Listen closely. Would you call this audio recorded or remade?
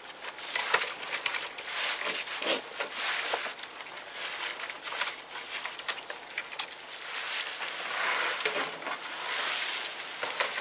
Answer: recorded